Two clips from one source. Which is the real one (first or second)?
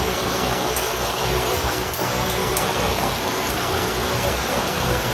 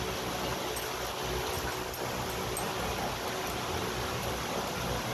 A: second